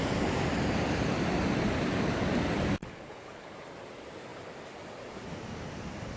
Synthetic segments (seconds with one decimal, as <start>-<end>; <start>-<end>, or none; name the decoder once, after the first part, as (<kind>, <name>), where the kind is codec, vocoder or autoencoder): 2.8-3.5 (codec, HILCodec)